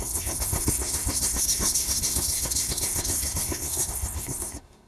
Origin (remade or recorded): remade